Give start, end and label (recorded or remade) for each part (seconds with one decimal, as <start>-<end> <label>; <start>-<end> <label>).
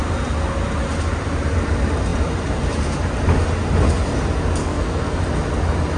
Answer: 0.0-4.6 recorded; 4.6-5.2 remade; 5.2-6.0 recorded